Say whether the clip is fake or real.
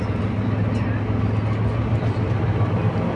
real